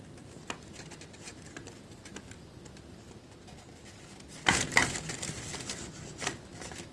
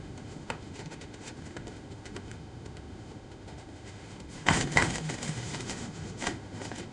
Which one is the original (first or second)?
first